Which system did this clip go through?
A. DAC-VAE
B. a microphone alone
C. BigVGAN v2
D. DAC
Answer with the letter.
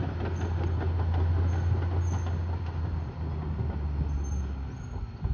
B